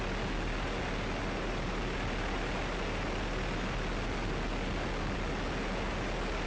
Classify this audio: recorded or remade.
recorded